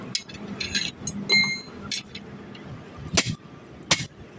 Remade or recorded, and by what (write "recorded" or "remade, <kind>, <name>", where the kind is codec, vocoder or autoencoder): recorded